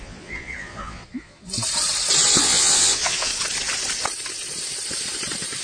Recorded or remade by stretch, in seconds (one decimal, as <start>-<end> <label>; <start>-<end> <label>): 0.0-1.5 remade; 1.5-2.4 recorded; 2.4-3.3 remade; 3.3-5.6 recorded